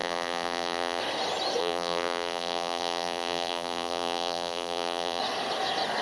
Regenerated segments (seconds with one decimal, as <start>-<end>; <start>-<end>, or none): 0.0-1.0; 1.6-5.2